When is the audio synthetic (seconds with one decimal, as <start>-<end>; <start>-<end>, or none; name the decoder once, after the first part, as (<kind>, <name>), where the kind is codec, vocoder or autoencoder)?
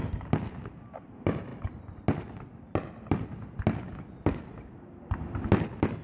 none